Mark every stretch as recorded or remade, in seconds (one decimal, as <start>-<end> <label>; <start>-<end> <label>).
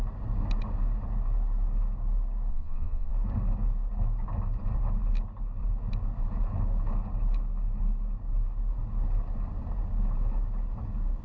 0.0-2.5 recorded; 2.5-3.1 remade; 3.1-11.2 recorded